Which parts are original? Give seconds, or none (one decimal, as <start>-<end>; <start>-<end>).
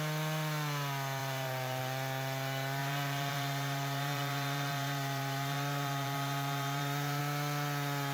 0.0-1.2; 1.8-2.8; 7.2-8.1